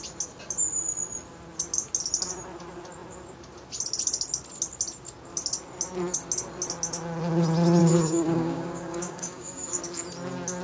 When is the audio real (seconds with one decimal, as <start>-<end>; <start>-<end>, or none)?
0.0-7.8; 9.8-10.6